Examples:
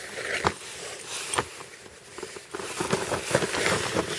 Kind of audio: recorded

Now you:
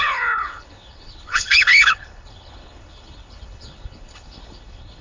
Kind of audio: remade